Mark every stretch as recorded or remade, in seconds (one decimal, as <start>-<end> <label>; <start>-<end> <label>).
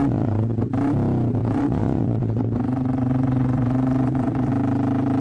0.0-0.7 remade; 0.7-1.4 recorded; 1.4-4.5 remade; 4.5-5.2 recorded